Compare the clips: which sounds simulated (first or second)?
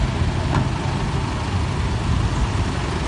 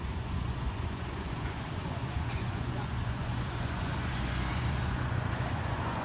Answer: second